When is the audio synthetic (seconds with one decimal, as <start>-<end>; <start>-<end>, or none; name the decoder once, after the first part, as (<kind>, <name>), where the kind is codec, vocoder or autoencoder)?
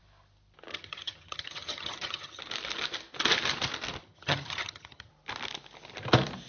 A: 0.7-2.4 (vocoder, HiFi-GAN); 4.0-5.1